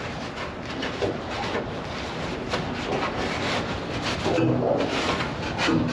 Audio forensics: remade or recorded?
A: recorded